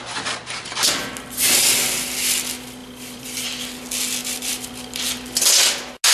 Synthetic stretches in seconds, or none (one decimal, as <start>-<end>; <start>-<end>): 2.8-3.6; 4.2-4.7